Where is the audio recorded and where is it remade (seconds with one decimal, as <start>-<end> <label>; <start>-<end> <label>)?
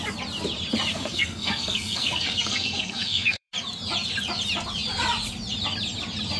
0.0-0.9 recorded; 0.9-3.5 remade; 3.5-6.4 recorded